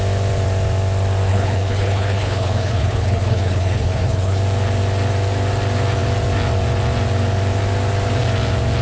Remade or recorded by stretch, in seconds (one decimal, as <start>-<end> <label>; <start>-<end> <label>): 0.0-1.3 recorded; 1.3-4.4 remade; 4.4-8.8 recorded